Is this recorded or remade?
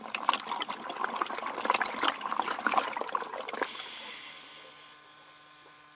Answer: recorded